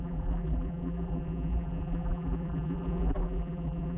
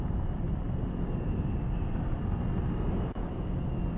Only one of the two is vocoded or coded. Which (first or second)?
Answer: first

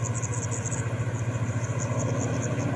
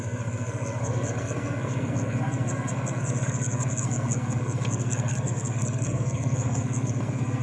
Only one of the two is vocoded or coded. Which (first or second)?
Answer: second